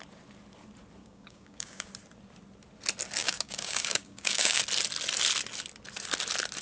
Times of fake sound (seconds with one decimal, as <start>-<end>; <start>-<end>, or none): 1.0-1.9; 3.2-4.6